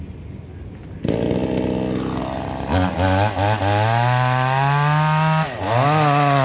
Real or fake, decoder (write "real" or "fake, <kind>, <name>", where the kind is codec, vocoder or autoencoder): real